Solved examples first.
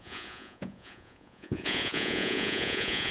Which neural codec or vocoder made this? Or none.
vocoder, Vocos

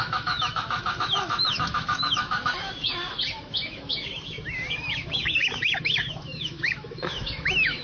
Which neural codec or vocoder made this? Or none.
autoencoder, DAC-VAE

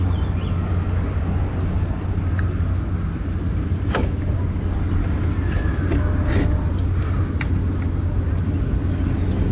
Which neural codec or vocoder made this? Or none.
none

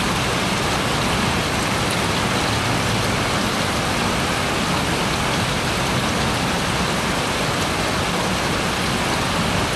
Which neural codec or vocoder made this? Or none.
none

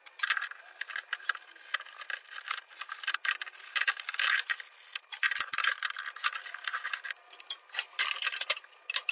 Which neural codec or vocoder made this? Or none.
none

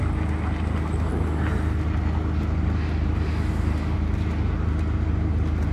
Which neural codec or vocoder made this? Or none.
none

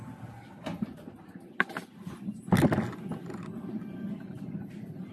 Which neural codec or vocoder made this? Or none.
none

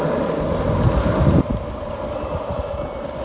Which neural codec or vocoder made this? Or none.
none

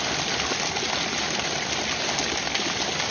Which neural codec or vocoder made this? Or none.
none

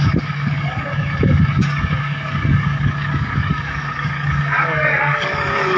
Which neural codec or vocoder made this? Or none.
codec, DAC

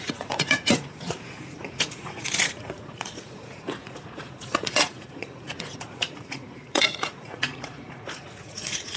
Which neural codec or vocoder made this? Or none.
vocoder, Vocos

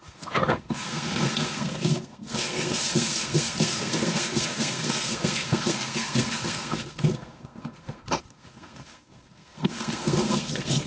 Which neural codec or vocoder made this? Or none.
codec, SNAC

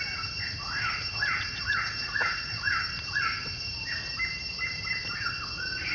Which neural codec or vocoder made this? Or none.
none